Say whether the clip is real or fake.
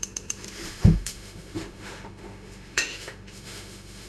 fake